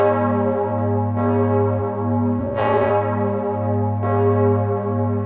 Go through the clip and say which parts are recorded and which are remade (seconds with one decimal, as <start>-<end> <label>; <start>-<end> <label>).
0.0-2.4 recorded; 2.4-2.9 remade; 2.9-5.3 recorded